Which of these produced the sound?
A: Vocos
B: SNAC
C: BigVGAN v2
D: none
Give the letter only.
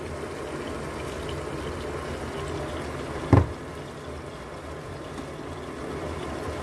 D